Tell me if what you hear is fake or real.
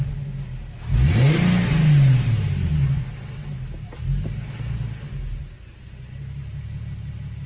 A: real